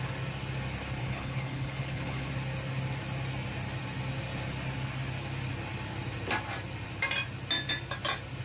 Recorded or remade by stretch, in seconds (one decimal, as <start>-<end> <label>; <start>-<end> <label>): 0.0-1.0 recorded; 1.0-2.3 remade; 2.3-8.4 recorded